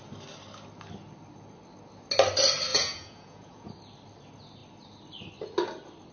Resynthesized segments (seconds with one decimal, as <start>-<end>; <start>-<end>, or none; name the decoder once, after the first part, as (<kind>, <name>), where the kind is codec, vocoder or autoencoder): 2.7-3.7 (vocoder, Vocos)